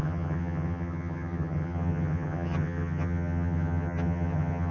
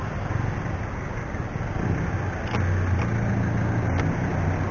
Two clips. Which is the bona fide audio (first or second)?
second